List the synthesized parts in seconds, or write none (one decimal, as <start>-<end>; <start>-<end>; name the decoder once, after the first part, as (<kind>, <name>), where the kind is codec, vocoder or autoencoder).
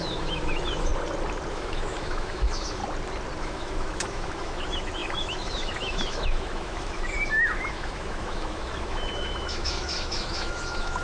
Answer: 0.0-0.9 (autoencoder, DAC-VAE); 1.5-2.8; 3.4-11.0